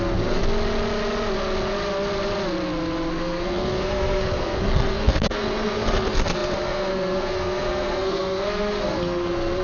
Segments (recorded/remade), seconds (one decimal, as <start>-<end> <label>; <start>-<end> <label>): 0.0-0.4 remade; 0.4-3.1 recorded; 3.1-9.6 remade